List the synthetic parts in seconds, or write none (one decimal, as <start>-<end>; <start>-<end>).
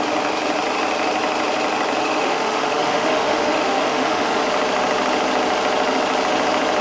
2.0-4.4